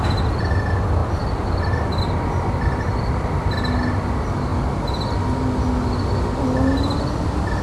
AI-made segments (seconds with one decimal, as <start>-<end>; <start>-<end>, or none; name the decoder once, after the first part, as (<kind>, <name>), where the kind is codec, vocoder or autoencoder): none